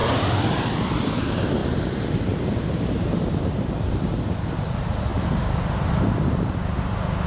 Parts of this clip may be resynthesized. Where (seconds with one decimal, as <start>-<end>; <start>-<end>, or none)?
1.2-5.1